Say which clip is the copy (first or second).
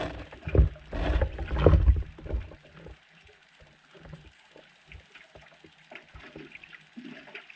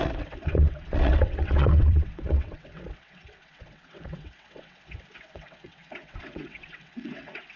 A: second